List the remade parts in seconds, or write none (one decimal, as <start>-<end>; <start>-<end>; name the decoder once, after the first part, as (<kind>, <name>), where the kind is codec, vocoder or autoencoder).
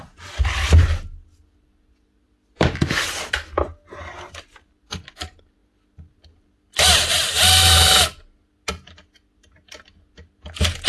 none